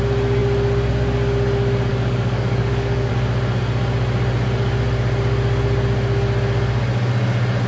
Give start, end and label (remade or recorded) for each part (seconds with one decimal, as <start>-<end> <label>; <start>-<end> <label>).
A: 0.0-1.9 recorded; 1.9-3.1 remade; 3.1-7.7 recorded